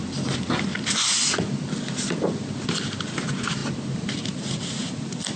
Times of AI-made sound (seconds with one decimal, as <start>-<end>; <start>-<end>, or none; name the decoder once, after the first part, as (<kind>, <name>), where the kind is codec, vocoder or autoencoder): none